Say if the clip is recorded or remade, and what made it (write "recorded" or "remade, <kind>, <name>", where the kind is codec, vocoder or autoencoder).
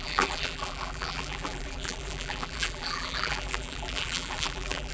remade, vocoder, BigVGAN v2